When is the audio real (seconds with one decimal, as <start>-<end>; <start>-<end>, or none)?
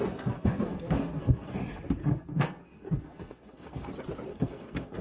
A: 1.5-2.0; 3.9-4.3